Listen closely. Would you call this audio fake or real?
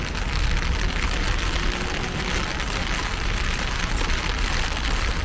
real